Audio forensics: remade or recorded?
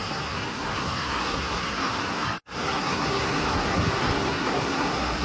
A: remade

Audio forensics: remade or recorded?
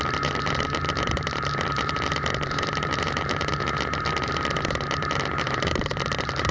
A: remade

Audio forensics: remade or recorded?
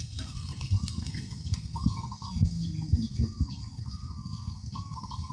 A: remade